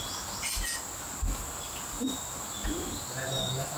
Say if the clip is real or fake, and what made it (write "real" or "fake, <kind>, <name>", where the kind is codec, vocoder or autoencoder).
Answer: real